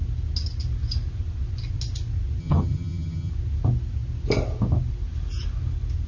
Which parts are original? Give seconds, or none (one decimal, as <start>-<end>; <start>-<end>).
0.0-2.4; 3.3-6.1